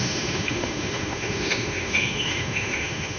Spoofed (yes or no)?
yes